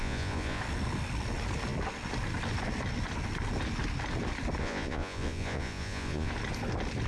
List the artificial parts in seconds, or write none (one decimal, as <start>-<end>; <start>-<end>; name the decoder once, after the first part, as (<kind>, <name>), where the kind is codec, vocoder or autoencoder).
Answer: 0.0-0.6 (vocoder, Vocos); 4.6-6.3